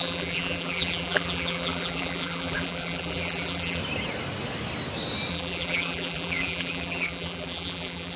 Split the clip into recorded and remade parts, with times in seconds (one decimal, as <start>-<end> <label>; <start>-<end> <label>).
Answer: 0.0-3.8 remade; 3.8-5.3 recorded; 5.3-8.2 remade